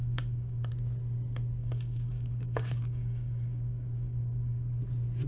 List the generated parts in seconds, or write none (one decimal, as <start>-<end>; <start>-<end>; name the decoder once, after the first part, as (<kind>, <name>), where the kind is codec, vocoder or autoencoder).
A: 0.0-0.7 (codec, DAC); 1.6-4.8